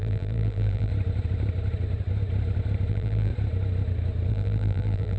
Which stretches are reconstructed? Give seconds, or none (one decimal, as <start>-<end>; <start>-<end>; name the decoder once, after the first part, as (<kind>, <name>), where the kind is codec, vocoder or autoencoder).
0.0-0.9 (vocoder, BigVGAN v2); 2.9-3.3; 4.3-5.2